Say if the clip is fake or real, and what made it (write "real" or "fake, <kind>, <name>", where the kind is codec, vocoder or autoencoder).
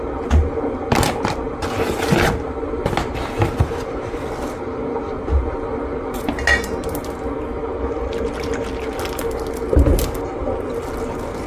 real